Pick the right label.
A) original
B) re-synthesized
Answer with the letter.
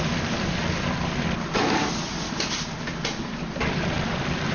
B